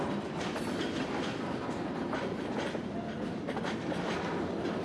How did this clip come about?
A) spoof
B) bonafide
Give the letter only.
B